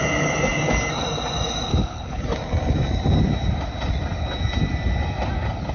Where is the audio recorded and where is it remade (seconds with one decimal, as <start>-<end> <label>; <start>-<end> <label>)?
0.0-1.7 recorded; 1.7-2.2 remade; 2.2-5.7 recorded